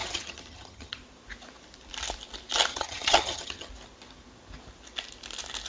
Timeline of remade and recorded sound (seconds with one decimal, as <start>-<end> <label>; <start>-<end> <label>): 0.0-1.0 remade; 1.0-2.7 recorded; 2.7-3.7 remade; 3.7-5.7 recorded